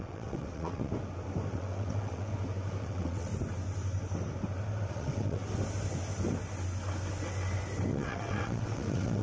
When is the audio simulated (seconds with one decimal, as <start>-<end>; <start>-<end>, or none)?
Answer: 0.0-0.9; 1.5-2.3; 2.8-3.3; 4.9-5.4; 7.9-9.2